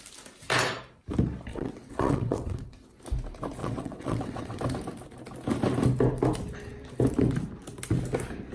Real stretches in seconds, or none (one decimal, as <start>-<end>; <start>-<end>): 0.0-1.5; 3.0-3.6; 4.6-8.5